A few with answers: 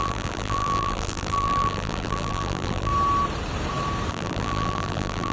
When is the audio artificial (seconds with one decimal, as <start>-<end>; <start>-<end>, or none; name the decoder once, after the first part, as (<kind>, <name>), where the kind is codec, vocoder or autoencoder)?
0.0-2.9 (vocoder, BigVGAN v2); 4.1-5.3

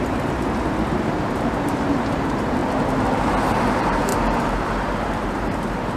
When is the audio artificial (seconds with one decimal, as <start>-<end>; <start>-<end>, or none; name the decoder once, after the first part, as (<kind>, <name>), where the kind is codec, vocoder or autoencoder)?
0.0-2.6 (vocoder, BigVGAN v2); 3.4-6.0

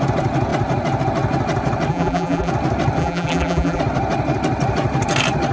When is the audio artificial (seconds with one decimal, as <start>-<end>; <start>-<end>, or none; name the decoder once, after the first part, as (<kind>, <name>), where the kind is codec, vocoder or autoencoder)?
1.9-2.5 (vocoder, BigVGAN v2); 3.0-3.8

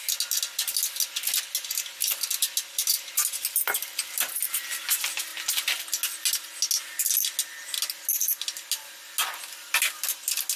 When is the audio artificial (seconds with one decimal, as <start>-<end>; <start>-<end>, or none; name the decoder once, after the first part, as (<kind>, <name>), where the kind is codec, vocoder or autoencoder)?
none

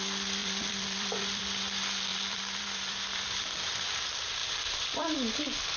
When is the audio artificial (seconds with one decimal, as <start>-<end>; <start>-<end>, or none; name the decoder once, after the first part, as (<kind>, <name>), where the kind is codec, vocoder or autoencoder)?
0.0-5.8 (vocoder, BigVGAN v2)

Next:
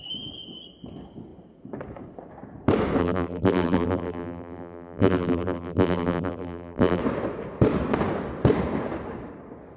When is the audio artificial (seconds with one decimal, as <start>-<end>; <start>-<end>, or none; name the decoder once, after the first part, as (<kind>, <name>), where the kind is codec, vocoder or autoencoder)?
3.0-7.0 (vocoder, BigVGAN v2)

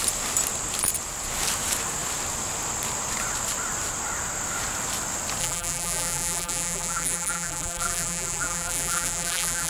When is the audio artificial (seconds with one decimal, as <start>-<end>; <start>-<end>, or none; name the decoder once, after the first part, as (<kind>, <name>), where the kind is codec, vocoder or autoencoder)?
5.4-9.7 (vocoder, BigVGAN v2)